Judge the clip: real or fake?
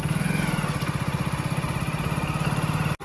real